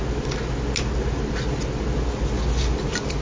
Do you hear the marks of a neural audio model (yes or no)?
no